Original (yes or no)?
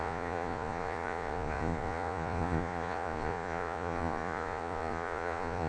no